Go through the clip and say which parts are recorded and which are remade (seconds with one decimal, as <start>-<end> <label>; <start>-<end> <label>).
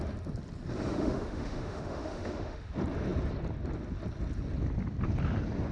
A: 0.0-0.9 recorded; 0.9-2.7 remade; 2.7-5.7 recorded